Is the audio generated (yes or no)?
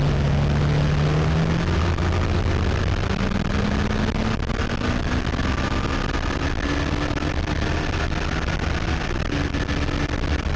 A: no